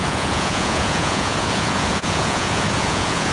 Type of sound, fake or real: fake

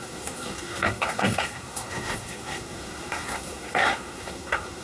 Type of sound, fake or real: fake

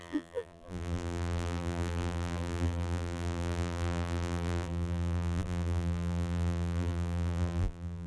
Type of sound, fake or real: fake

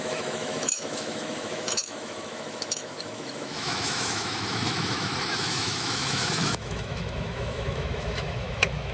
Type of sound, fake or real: fake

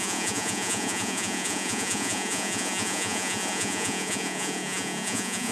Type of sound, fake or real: fake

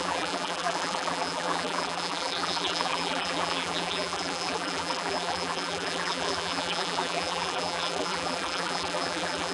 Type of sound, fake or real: fake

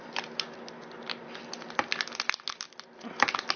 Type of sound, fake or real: real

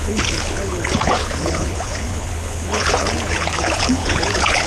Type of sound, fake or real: fake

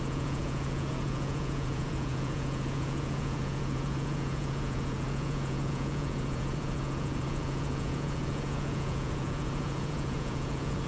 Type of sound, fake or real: fake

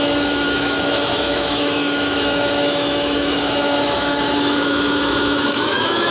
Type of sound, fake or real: fake